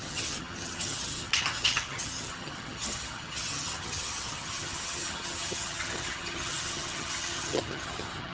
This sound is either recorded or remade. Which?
remade